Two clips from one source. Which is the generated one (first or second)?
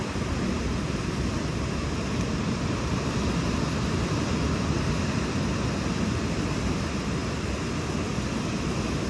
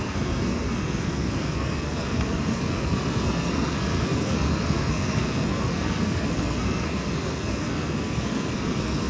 second